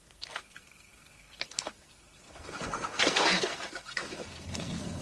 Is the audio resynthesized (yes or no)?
yes